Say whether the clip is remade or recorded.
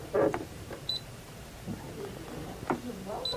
recorded